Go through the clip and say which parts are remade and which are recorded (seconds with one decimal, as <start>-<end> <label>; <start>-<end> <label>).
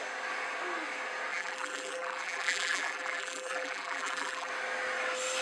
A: 0.0-1.3 recorded; 1.3-4.5 remade; 4.5-5.4 recorded